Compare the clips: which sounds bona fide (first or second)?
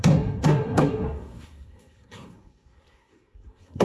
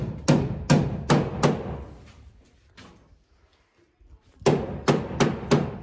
second